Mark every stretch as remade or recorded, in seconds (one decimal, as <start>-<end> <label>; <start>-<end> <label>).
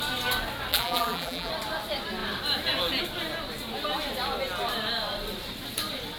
0.0-0.7 recorded; 0.7-1.5 remade; 1.5-6.2 recorded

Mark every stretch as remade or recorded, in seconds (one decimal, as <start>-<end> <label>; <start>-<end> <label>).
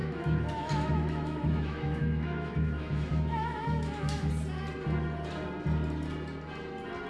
0.0-4.3 remade; 4.3-7.1 recorded